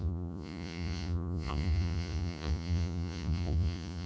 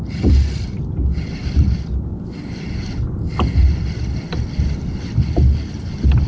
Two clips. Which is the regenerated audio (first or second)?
first